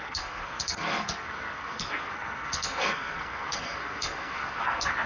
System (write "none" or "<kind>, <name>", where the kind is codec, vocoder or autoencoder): codec, SNAC